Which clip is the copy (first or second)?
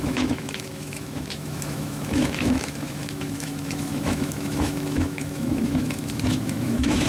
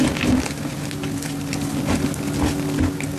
first